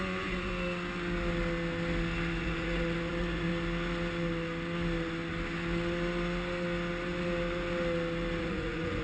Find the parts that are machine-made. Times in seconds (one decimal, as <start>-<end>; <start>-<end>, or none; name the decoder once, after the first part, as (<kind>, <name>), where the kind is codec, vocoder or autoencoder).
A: 0.0-0.5 (vocoder, Vocos); 2.4-3.5; 8.4-9.0